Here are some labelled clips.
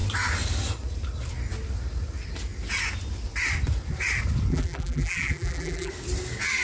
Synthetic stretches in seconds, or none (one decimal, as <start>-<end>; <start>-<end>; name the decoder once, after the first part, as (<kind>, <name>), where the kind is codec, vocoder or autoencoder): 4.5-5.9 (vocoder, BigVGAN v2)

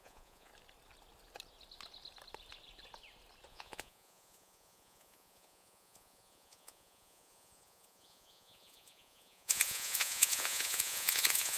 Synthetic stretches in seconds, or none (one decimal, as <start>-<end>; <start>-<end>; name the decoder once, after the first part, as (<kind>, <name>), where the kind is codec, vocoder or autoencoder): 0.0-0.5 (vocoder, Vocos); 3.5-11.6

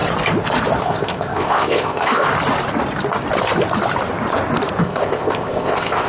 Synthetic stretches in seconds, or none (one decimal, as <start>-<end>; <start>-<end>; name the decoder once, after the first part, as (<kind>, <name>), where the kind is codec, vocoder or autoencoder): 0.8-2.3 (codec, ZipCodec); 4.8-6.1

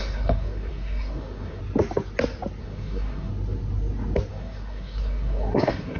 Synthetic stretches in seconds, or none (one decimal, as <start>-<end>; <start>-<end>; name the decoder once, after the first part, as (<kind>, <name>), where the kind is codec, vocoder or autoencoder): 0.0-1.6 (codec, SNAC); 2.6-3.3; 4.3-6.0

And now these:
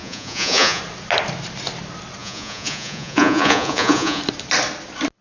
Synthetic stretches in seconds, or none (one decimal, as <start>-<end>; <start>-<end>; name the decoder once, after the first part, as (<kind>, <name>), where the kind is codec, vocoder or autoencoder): 0.0-0.8 (vocoder, Vocos); 2.2-4.2

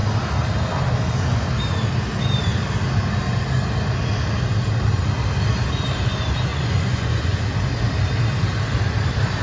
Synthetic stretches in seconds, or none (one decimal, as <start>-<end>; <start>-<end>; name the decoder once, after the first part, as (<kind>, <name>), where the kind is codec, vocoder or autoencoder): 6.5-7.4 (vocoder, Vocos)

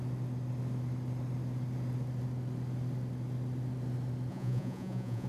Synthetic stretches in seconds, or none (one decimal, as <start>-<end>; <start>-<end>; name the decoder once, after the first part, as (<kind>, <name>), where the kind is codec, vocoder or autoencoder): 4.3-5.3 (vocoder, Vocos)